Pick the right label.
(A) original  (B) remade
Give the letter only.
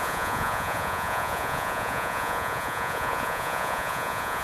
B